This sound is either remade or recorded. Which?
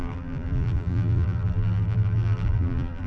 remade